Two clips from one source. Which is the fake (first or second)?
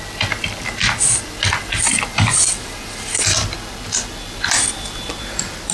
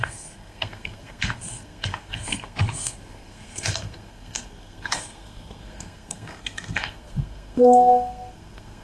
second